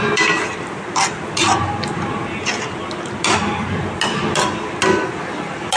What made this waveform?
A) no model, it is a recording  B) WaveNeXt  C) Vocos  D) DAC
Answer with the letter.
A